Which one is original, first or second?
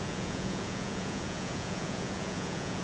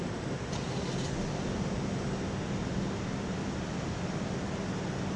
second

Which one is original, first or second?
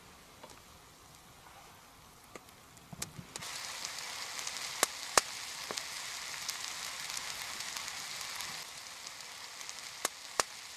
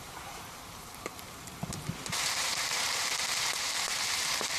first